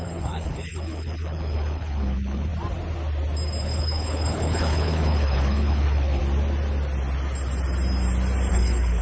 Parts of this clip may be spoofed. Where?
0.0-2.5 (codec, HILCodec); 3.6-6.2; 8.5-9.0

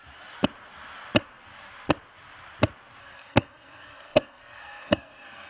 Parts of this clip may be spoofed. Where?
3.0-5.5 (codec, SNAC)

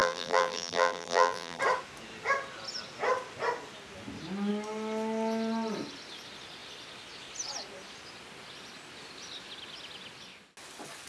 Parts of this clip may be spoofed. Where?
0.0-1.6 (vocoder, BigVGAN v2)

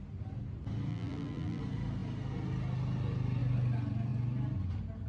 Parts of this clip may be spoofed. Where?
0.9-1.6 (vocoder, BigVGAN v2)

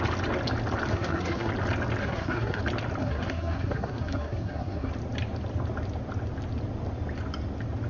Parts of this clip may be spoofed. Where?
0.9-1.5 (codec, SNAC); 2.0-2.6; 3.0-4.9

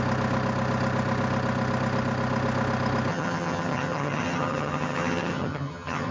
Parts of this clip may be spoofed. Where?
3.1-6.1 (vocoder, HiFi-GAN)

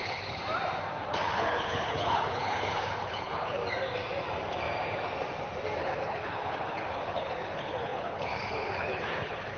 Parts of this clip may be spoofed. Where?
0.0-0.4 (codec, HILCodec); 1.1-3.6; 5.8-9.6

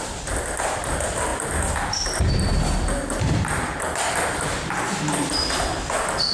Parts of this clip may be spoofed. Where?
none